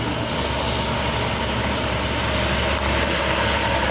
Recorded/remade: recorded